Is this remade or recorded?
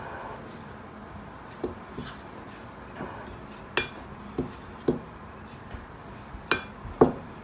recorded